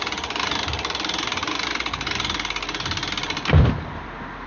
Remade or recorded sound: recorded